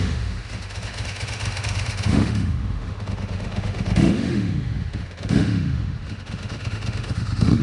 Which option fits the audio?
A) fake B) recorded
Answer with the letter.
A